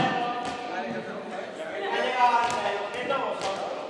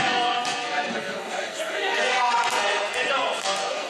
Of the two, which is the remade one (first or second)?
second